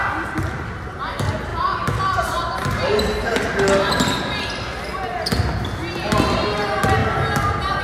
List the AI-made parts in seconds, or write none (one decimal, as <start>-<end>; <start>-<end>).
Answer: none